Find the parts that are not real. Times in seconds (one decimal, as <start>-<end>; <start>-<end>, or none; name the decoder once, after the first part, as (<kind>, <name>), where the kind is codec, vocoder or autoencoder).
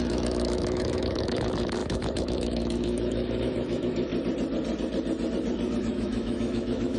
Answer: 0.0-4.1 (autoencoder, DAC-VAE); 5.8-7.0